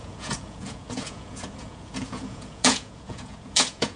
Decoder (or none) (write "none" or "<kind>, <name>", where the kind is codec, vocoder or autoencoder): vocoder, Vocos